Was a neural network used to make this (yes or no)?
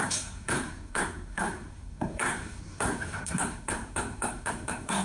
yes